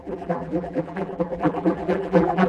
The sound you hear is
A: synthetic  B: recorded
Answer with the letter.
A